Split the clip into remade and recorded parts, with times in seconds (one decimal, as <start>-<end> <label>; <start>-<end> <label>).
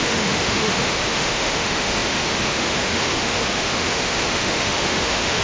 0.0-5.4 remade